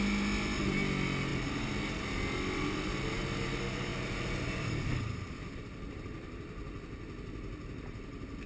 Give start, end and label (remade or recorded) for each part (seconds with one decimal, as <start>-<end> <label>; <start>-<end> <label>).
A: 0.0-8.5 recorded